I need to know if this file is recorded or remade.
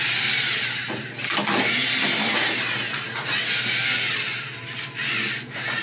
recorded